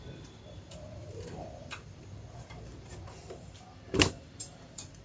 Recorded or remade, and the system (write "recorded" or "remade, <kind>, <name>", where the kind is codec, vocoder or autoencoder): remade, vocoder, BigVGAN v2